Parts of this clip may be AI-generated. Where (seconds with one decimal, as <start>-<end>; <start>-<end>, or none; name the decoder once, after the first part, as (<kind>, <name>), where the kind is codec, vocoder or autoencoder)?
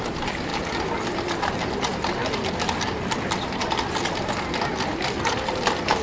none